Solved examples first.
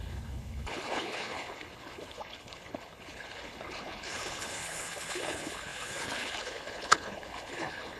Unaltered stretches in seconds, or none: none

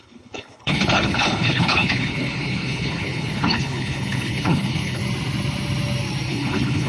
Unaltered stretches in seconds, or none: 5.0-6.3

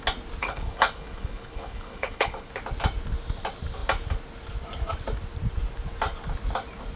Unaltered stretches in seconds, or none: 0.0-0.4; 2.5-7.0